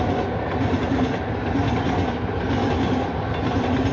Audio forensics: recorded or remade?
recorded